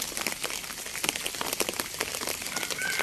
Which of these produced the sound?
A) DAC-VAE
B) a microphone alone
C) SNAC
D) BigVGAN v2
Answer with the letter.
B